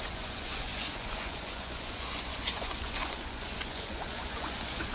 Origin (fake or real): fake